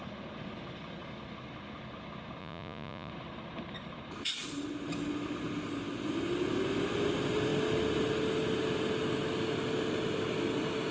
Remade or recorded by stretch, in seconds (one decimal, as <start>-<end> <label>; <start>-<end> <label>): 0.0-2.4 recorded; 2.4-3.1 remade; 3.1-10.9 recorded